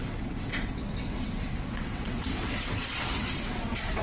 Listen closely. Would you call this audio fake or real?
fake